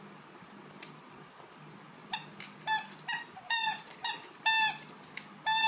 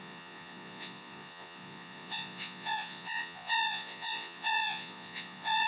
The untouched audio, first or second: first